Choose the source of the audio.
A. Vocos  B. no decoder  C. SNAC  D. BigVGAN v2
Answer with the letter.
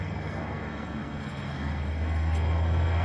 C